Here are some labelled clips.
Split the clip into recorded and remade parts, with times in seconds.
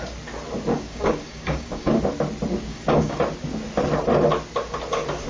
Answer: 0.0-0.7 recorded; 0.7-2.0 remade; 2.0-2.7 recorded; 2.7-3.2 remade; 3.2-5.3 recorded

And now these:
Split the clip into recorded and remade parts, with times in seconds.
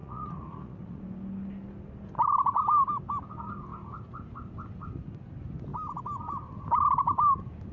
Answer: 0.0-1.0 remade; 1.0-7.7 recorded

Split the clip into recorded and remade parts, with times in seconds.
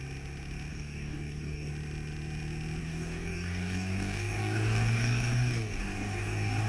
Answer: 0.0-0.7 recorded; 0.7-1.7 remade; 1.7-2.8 recorded; 2.8-6.7 remade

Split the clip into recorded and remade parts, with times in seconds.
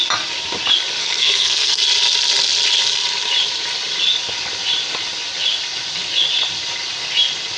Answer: 0.0-1.0 recorded; 1.0-1.8 remade; 1.8-7.6 recorded